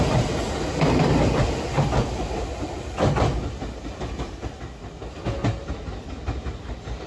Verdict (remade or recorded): recorded